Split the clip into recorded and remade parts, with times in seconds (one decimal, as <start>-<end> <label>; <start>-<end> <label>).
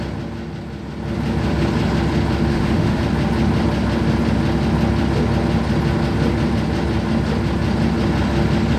0.0-2.5 recorded; 2.5-3.0 remade; 3.0-8.8 recorded